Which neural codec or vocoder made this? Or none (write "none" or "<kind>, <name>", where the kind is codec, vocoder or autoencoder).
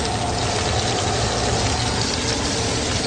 none